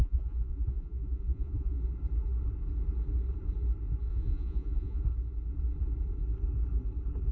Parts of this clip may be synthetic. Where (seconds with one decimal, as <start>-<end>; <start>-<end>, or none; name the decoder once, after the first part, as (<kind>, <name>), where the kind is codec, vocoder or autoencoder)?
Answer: 0.0-1.8 (vocoder, Vocos); 4.1-5.0